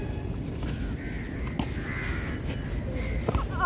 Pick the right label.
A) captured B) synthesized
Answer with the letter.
A